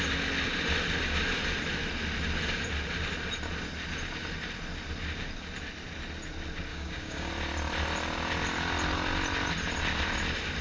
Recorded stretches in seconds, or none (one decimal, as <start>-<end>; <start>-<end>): 0.0-6.7; 7.3-10.6